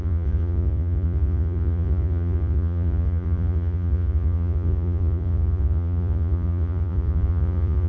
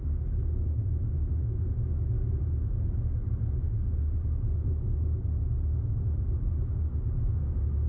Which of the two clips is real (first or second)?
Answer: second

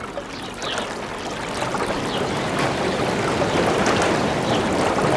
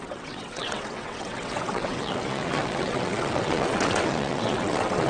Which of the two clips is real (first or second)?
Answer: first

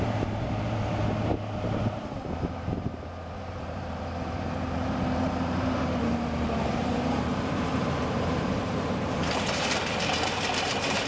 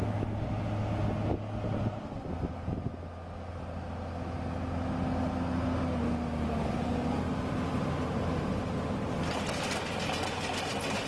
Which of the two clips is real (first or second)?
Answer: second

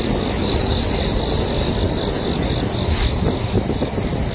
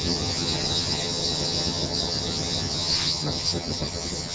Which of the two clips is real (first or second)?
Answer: first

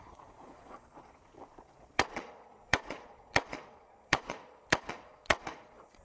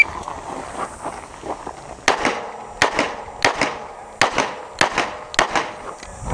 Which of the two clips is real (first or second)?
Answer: second